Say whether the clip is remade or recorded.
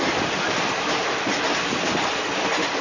recorded